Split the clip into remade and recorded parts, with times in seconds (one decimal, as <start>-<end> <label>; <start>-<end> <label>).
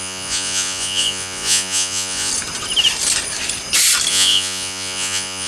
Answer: 0.0-2.3 remade; 2.3-4.1 recorded; 4.1-5.5 remade